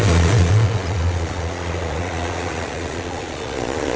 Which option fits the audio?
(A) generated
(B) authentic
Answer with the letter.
A